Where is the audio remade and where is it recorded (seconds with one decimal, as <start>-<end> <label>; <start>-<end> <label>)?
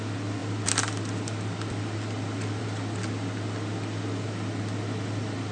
0.0-5.5 recorded